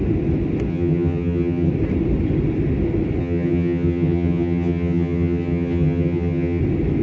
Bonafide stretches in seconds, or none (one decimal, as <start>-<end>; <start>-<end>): 0.0-0.7; 1.7-3.2; 6.6-7.0